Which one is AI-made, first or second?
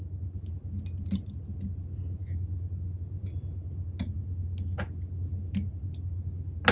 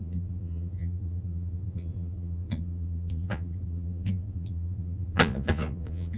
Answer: second